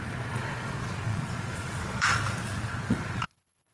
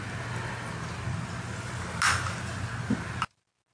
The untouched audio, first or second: second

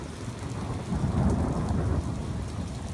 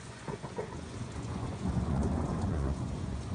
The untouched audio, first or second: first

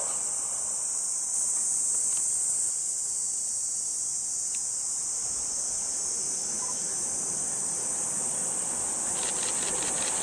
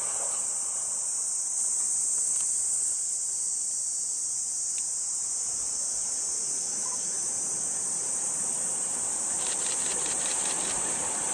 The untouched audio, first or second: first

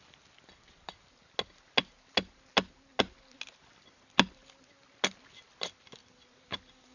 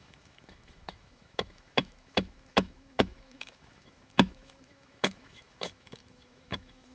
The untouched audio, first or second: first